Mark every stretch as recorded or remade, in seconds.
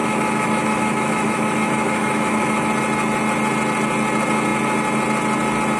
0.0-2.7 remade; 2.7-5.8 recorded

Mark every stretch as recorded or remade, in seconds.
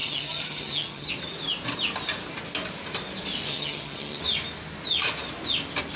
0.0-1.1 remade; 1.1-3.5 recorded; 3.5-4.2 remade; 4.2-6.0 recorded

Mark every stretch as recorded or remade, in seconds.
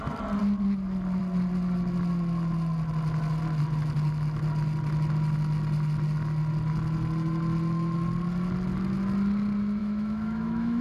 0.0-9.8 recorded; 9.8-10.8 remade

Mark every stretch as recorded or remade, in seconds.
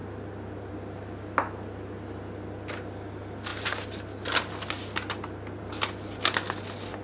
0.0-7.0 recorded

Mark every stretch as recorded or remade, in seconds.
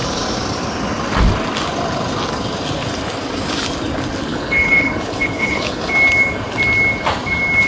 0.0-4.3 recorded; 4.3-5.9 remade; 5.9-7.7 recorded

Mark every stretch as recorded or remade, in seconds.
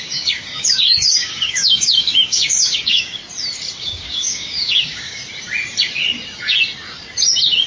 0.0-3.2 remade; 3.2-3.8 recorded; 3.8-5.2 remade; 5.2-7.7 recorded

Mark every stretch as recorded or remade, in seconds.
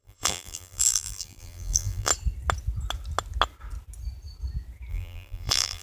0.0-2.1 remade; 2.1-4.9 recorded; 4.9-5.8 remade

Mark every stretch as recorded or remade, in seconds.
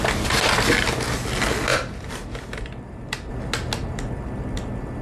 0.0-1.7 recorded; 1.7-3.3 remade; 3.3-5.0 recorded